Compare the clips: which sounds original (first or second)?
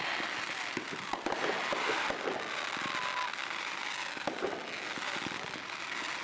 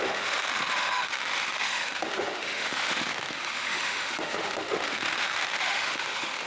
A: first